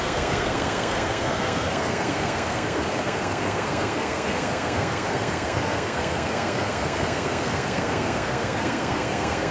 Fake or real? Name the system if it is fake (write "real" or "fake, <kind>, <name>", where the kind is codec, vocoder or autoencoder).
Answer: fake, codec, SNAC